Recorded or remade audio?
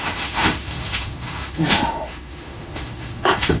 remade